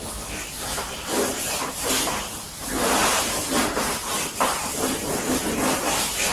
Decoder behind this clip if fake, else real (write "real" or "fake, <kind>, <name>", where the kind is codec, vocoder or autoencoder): real